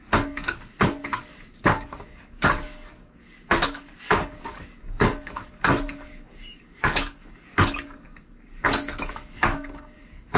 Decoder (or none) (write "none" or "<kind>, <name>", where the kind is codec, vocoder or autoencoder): codec, DAC